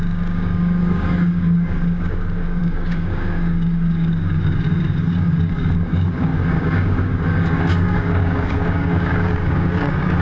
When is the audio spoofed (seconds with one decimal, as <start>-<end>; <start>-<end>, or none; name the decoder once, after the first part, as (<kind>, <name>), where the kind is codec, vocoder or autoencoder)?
0.0-10.2 (codec, DAC)